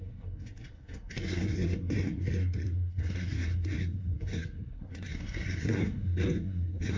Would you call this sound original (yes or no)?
no